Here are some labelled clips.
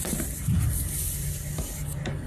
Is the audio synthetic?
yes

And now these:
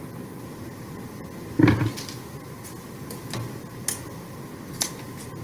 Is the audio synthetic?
no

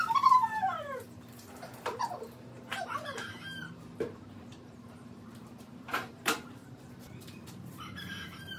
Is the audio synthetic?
yes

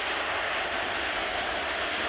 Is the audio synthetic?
no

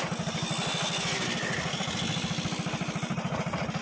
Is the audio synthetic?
yes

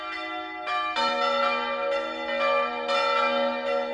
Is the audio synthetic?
no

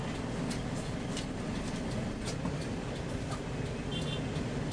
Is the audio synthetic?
no